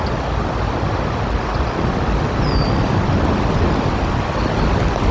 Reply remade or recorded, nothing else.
recorded